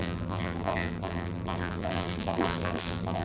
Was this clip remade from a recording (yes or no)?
yes